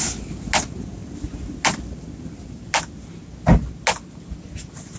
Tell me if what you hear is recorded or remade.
recorded